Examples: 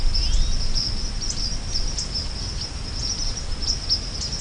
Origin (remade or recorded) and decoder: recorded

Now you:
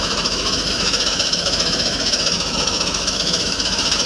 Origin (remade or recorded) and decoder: remade, autoencoder, DAC-VAE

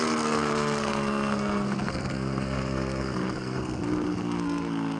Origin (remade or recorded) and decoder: remade, codec, SNAC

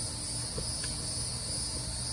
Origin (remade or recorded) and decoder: recorded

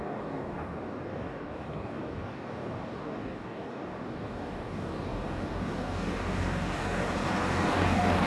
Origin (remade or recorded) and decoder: remade, codec, DAC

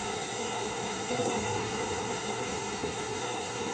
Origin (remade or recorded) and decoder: remade, codec, SNAC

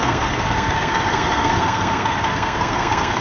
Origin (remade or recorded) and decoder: remade, codec, SNAC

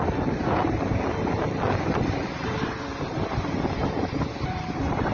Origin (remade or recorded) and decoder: remade, vocoder, BigVGAN v2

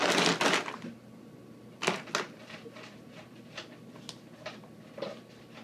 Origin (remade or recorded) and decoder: recorded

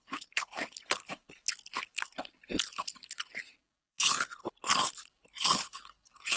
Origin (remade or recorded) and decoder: remade, codec, HILCodec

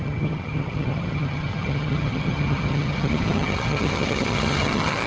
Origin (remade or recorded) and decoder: remade, vocoder, HiFi-GAN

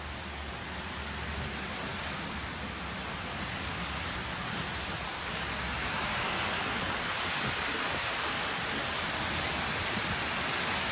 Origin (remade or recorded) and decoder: recorded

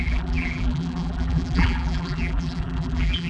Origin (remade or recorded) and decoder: remade, vocoder, BigVGAN v2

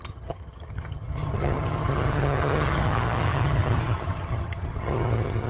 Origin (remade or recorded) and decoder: remade, vocoder, HiFi-GAN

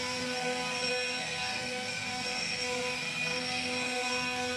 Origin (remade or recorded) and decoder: remade, codec, SNAC